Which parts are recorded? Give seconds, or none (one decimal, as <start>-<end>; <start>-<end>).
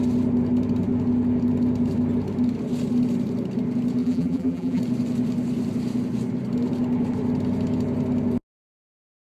0.0-4.0; 4.8-9.4